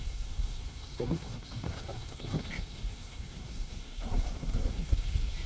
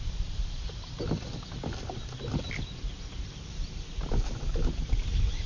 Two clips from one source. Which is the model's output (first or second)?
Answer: first